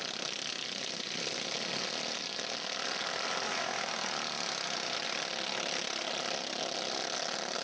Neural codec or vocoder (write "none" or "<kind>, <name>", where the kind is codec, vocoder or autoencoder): none